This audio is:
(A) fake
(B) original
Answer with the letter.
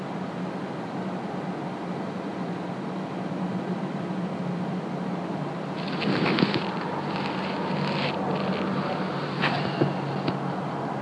B